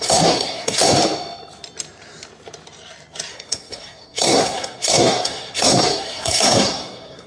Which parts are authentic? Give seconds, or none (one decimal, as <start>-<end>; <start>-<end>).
0.8-3.3